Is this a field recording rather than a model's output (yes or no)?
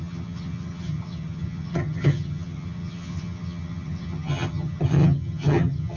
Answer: no